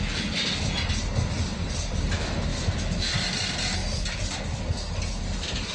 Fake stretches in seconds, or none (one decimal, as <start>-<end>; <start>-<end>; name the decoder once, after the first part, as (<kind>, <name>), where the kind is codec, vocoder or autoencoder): 1.5-2.1 (vocoder, BigVGAN v2); 3.8-4.3